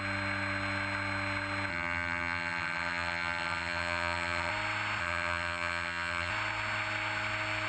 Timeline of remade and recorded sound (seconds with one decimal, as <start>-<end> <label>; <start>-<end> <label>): 0.0-1.7 recorded; 1.7-4.5 remade; 4.5-5.0 recorded; 5.0-6.3 remade; 6.3-7.7 recorded